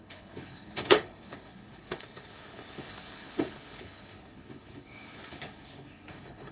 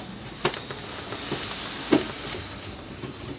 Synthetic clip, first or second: first